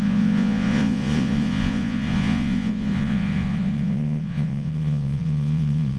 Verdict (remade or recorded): remade